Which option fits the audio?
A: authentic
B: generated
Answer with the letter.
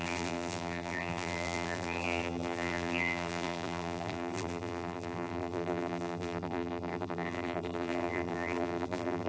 B